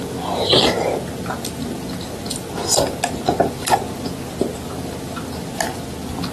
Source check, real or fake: real